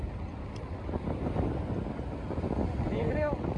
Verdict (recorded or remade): recorded